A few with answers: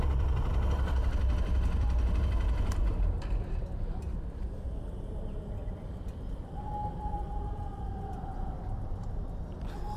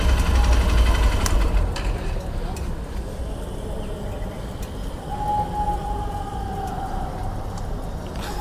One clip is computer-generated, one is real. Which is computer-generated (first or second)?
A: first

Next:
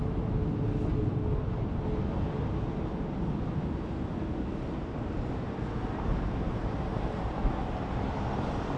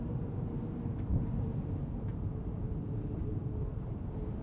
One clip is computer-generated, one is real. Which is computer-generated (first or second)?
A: second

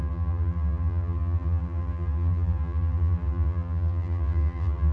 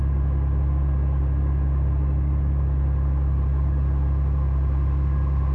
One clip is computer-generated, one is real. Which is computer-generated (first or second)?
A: first